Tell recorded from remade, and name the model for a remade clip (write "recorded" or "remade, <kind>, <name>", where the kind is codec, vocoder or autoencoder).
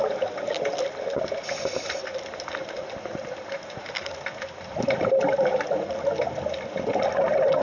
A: recorded